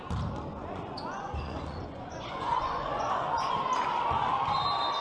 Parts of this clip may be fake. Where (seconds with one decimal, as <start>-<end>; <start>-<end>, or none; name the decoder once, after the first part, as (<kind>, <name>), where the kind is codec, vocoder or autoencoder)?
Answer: 0.5-3.5 (vocoder, Vocos)